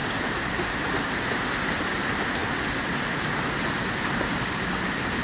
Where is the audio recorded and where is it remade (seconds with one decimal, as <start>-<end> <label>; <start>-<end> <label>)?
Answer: 0.0-5.2 recorded